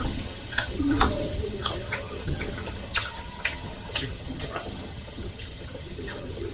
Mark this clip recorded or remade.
remade